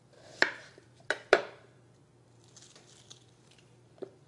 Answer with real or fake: fake